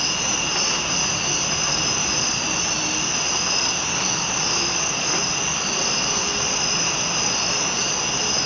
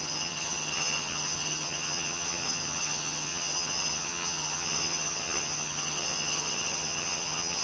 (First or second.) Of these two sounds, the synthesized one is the second